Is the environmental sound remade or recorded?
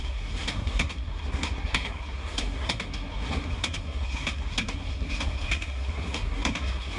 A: remade